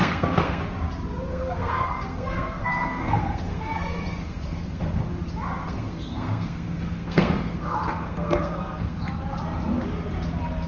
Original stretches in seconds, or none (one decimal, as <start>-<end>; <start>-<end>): 0.6-1.3; 5.0-5.6; 9.1-10.7

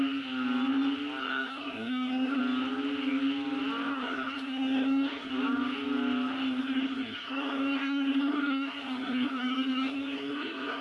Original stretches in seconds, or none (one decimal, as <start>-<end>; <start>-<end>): 0.0-1.2; 2.4-3.9; 5.3-6.6

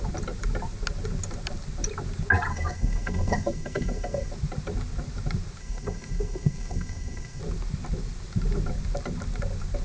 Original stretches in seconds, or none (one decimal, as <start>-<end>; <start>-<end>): 0.0-2.5; 4.3-5.6; 7.4-9.8

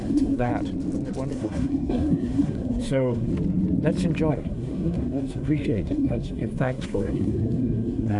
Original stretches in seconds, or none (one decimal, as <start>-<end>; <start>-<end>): 0.5-1.3; 3.3-4.3

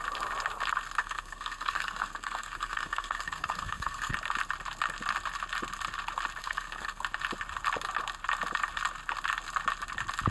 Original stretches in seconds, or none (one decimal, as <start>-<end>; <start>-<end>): 0.0-1.0; 4.1-6.4; 7.0-10.3